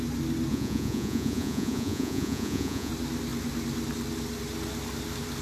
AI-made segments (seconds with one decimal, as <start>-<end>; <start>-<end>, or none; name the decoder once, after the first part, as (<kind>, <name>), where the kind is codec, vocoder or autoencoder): 0.5-2.9 (vocoder, Vocos)